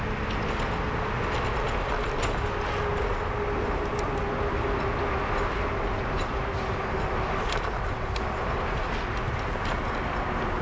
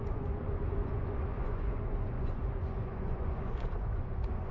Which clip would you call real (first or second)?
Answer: first